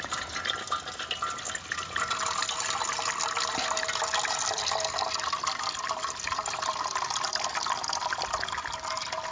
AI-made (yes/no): no